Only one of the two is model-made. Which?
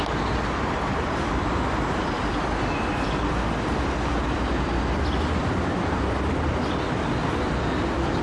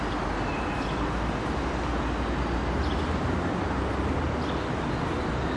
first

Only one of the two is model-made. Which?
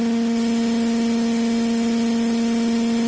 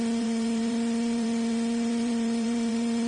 second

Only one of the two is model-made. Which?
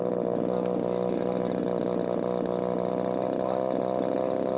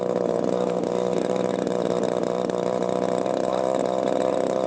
second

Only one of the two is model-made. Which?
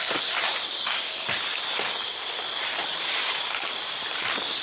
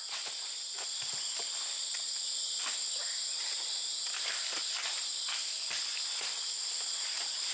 first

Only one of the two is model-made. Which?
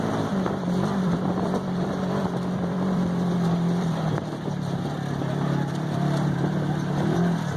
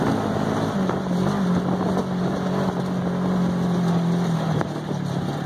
first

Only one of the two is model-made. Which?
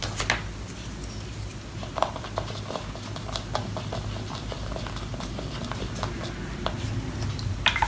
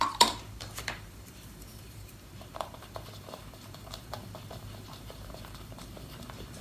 second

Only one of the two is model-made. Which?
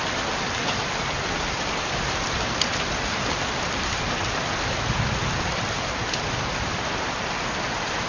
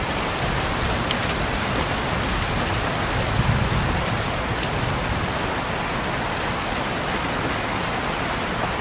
first